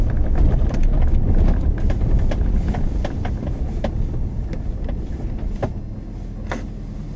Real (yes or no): yes